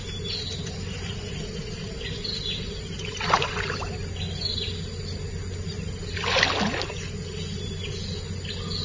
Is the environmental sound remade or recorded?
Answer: recorded